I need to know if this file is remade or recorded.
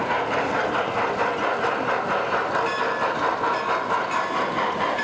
recorded